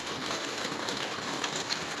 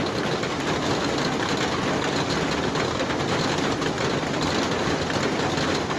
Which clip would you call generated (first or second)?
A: first